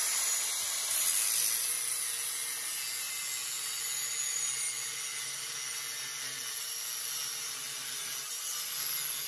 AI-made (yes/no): no